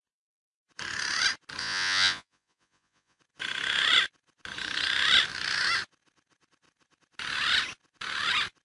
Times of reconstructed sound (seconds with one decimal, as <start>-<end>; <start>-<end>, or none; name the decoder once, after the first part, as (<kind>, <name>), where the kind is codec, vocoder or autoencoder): 1.6-3.2 (vocoder, Vocos)